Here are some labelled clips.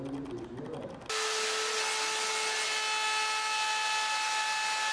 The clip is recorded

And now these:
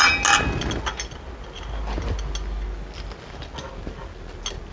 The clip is recorded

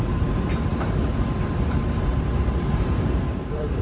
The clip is remade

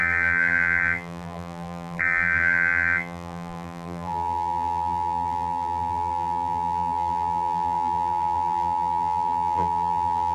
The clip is remade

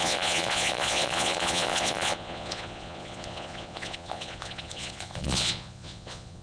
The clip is remade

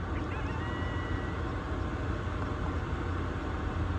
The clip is recorded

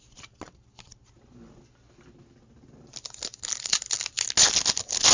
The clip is recorded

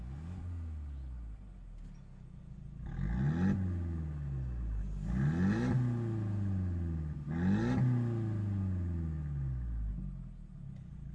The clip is recorded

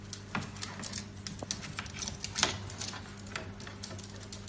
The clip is recorded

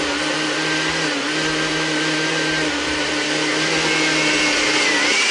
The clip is recorded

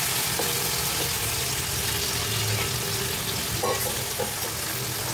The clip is recorded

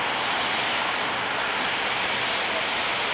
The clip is recorded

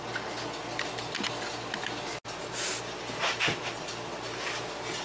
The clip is recorded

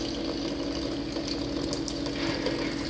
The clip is recorded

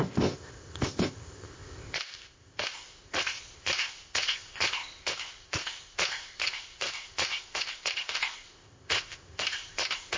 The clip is remade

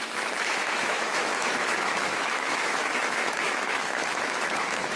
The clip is remade